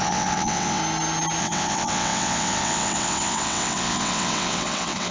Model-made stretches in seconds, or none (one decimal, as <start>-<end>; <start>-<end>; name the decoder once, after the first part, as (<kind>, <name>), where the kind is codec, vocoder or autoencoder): 0.0-0.8 (vocoder, WaveNeXt); 1.4-5.1